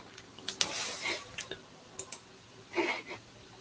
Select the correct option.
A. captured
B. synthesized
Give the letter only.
A